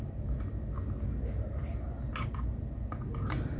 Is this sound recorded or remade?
recorded